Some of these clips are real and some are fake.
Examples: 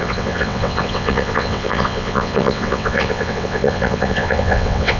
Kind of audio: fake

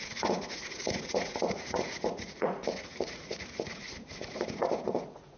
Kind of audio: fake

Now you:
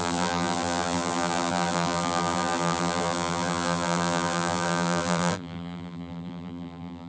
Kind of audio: fake